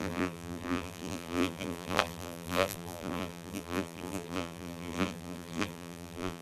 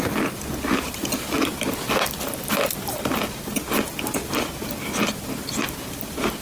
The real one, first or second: second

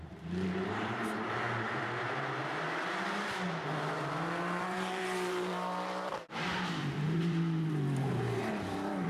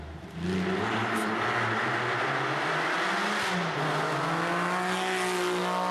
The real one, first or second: second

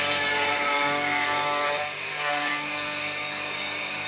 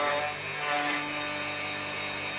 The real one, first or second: second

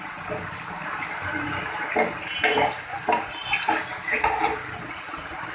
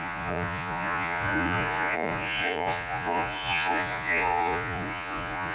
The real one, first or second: first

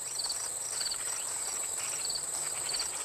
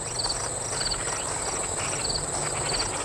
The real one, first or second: second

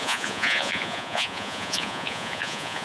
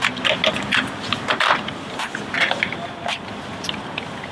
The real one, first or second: second